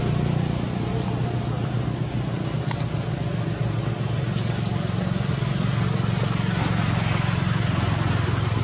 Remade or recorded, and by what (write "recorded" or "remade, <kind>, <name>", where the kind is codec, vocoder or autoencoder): recorded